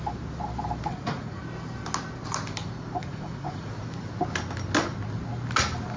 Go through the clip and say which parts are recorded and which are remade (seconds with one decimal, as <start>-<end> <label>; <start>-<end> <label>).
0.0-0.9 recorded; 0.9-1.4 remade; 1.4-3.0 recorded; 3.0-3.7 remade; 3.7-6.0 recorded